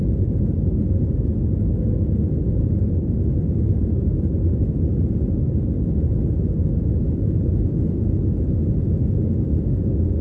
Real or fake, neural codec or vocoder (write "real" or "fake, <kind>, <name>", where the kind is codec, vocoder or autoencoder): real